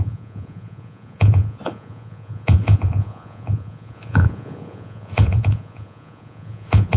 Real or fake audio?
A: fake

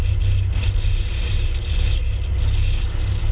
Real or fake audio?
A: real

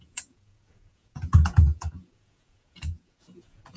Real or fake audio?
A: fake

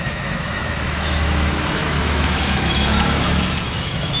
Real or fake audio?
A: fake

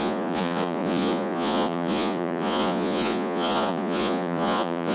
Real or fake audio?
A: fake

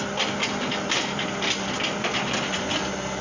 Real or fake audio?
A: real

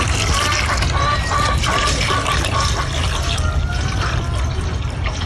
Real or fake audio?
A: real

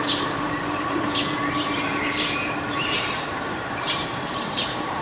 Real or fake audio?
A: fake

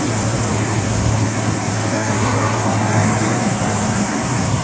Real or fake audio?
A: fake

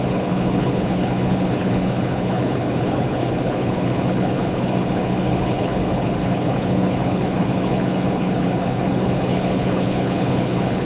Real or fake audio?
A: fake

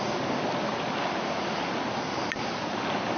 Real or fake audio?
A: real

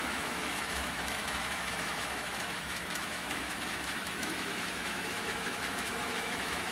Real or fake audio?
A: fake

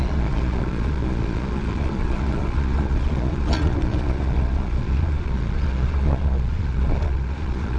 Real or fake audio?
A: fake